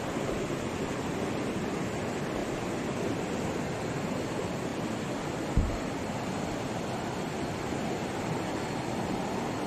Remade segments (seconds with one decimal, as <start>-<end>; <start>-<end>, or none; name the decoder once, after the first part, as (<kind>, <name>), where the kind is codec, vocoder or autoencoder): none